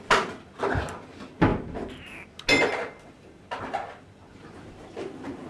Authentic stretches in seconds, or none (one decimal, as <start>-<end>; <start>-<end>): 0.0-5.5